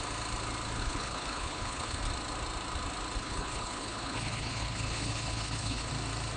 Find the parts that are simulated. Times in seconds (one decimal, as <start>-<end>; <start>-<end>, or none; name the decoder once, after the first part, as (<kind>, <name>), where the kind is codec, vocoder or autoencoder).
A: 0.8-2.0 (codec, HILCodec); 3.2-5.9